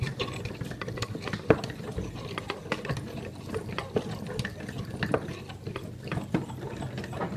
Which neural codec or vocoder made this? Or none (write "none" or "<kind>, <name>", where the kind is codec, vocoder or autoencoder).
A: none